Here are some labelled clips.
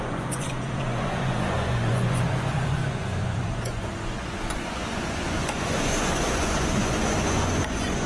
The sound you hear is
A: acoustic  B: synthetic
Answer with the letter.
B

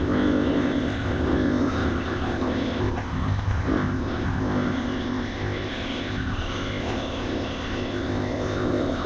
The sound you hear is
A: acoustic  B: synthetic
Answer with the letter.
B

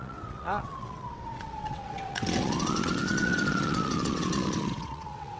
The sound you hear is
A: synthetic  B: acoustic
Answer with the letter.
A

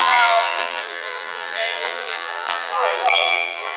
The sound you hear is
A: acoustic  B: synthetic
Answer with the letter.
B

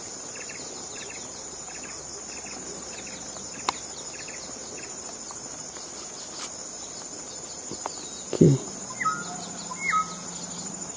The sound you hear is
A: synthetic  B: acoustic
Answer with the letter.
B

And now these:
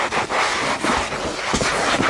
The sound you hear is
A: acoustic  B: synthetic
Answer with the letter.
A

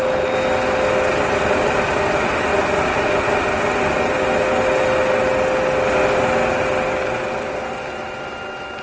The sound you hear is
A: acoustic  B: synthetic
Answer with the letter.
A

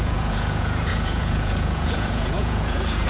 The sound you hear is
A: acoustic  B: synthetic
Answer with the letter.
B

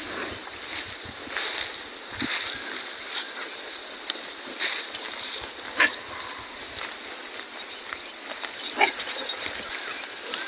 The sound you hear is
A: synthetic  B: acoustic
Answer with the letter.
B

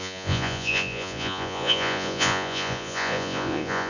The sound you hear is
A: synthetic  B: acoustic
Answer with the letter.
A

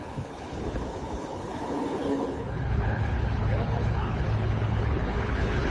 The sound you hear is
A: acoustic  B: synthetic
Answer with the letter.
B